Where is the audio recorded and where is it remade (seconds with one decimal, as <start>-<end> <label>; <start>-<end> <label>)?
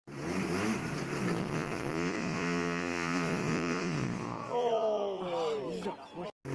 0.0-1.4 recorded; 1.4-5.2 remade; 5.2-6.5 recorded